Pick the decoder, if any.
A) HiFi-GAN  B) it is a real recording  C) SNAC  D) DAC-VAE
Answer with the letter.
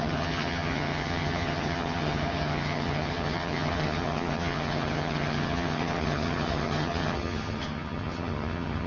A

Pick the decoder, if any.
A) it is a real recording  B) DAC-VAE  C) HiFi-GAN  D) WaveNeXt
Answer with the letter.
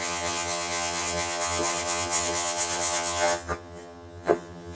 C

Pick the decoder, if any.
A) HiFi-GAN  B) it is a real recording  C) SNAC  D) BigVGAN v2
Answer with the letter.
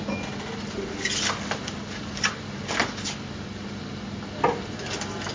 B